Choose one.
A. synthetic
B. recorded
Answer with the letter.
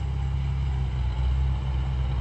B